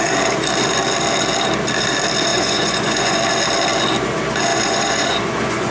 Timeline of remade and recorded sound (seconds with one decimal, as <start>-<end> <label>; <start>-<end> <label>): 0.0-2.3 recorded; 2.3-3.2 remade; 3.2-4.5 recorded; 4.5-5.7 remade